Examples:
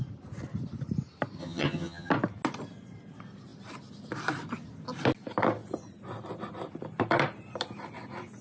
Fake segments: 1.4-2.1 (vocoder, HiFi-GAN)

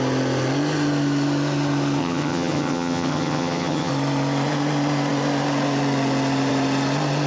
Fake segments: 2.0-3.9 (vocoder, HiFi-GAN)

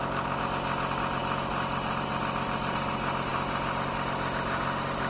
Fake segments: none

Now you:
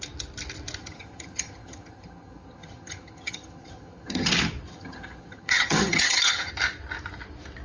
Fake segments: 0.8-4.3 (vocoder, HiFi-GAN); 4.7-6.5

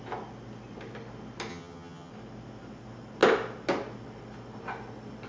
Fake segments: 1.5-2.1 (vocoder, HiFi-GAN)

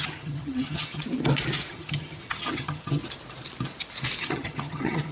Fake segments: 0.0-1.0 (vocoder, HiFi-GAN); 1.7-3.0; 4.2-5.1